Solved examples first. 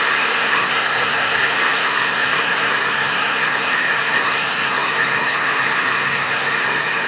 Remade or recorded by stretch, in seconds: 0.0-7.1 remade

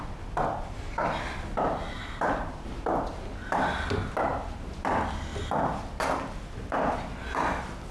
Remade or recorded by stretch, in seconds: 0.0-7.9 recorded

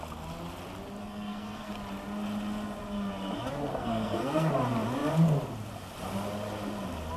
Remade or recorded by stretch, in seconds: 0.0-1.0 recorded; 1.0-1.7 remade; 1.7-3.7 recorded; 3.7-4.5 remade; 4.5-7.2 recorded

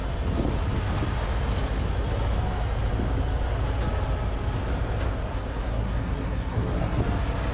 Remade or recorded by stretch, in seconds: 0.0-5.3 recorded; 5.3-7.0 remade; 7.0-7.5 recorded